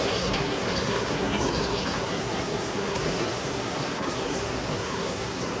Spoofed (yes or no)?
yes